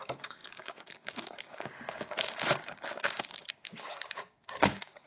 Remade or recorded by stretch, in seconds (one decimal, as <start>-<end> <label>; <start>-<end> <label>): 0.0-5.1 remade